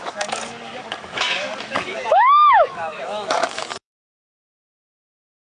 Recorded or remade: remade